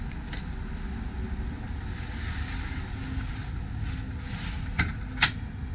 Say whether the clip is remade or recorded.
recorded